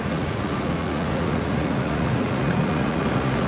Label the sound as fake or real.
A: fake